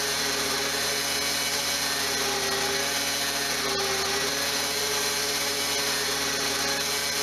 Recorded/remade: recorded